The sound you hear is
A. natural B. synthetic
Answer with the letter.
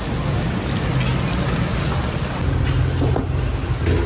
A